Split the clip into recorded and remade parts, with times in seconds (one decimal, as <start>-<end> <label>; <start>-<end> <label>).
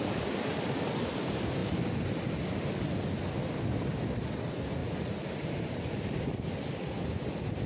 0.0-7.7 recorded